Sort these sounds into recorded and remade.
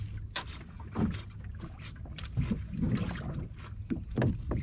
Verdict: recorded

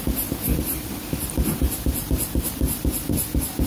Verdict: recorded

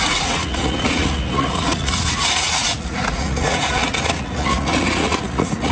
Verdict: remade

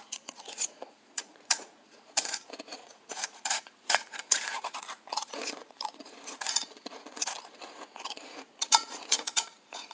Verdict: remade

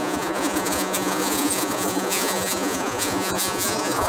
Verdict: remade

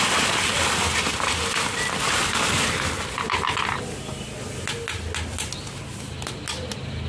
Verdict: recorded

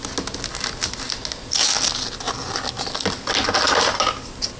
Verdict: recorded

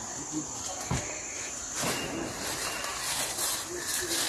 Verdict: recorded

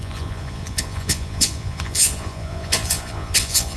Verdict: remade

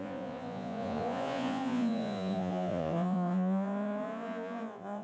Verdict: remade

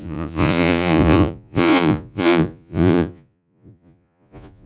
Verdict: remade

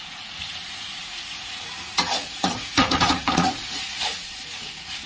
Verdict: remade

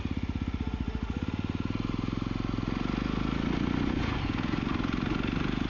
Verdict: recorded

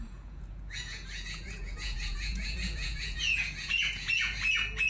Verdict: remade